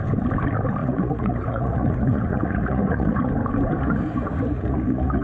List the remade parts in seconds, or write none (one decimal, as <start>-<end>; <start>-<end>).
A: 0.8-3.3; 3.8-5.2